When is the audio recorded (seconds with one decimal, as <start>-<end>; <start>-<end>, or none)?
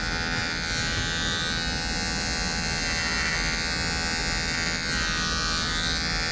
0.0-6.3